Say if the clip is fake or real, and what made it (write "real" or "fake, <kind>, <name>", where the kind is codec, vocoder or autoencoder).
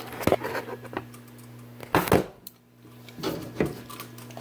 real